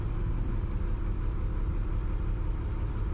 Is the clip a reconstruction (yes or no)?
no